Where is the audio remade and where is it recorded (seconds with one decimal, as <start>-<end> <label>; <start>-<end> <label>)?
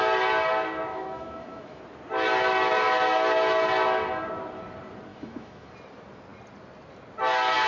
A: 0.0-0.9 recorded; 0.9-1.8 remade; 1.8-5.1 recorded; 5.1-5.7 remade; 5.7-7.7 recorded